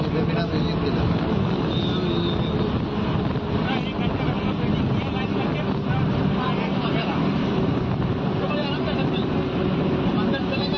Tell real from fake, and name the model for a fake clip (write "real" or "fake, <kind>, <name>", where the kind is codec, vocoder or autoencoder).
real